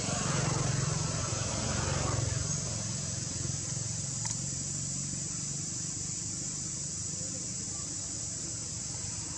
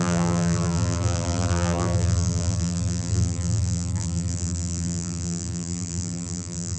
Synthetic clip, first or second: second